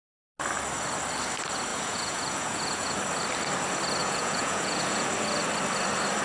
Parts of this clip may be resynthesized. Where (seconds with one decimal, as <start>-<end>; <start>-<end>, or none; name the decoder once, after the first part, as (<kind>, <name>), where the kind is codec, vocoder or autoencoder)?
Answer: 1.7-3.0 (vocoder, Vocos); 4.0-5.1